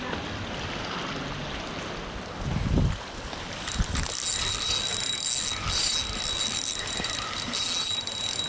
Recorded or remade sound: recorded